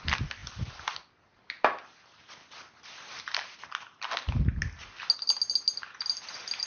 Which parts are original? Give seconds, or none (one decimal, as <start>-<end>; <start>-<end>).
0.0-6.7